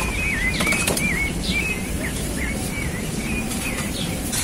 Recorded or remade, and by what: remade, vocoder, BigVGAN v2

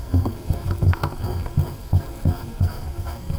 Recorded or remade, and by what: remade, codec, SNAC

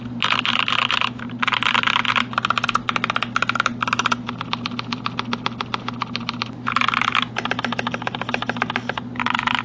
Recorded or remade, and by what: recorded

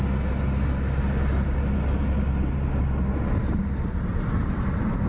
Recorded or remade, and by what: recorded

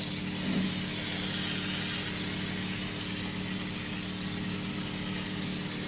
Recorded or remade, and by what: recorded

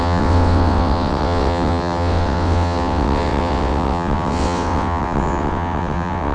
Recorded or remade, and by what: remade, vocoder, WaveNeXt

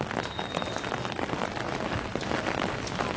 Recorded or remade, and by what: recorded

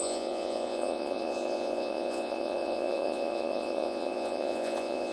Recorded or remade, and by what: remade, vocoder, Vocos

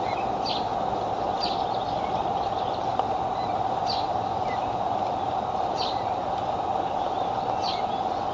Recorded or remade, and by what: recorded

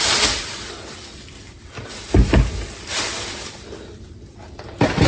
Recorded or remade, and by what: recorded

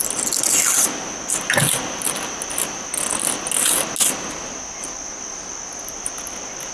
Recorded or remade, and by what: recorded